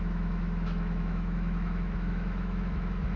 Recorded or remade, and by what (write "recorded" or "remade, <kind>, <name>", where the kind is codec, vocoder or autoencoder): remade, autoencoder, DAC-VAE